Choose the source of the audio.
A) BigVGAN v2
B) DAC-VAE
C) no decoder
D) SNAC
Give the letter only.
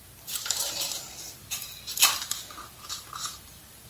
A